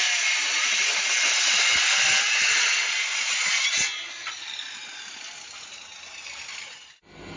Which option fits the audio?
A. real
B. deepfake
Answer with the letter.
A